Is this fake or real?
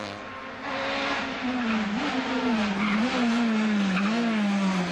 real